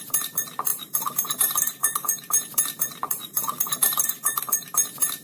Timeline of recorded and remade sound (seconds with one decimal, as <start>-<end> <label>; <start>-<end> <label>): 0.0-5.2 remade